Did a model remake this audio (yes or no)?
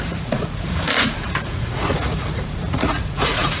yes